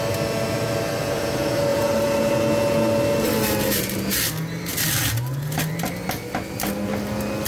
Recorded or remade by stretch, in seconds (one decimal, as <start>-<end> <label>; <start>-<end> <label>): 0.0-1.7 recorded; 1.7-2.3 remade; 2.3-7.5 recorded